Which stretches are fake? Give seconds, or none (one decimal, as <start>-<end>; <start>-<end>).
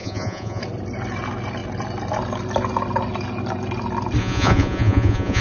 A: 0.0-0.6; 4.2-5.4